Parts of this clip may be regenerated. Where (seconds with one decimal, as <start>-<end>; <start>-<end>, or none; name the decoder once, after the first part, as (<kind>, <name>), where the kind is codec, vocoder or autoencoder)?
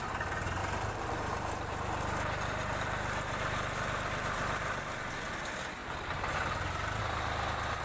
0.6-4.8 (vocoder, BigVGAN v2)